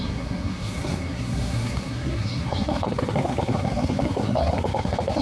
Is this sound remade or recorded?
remade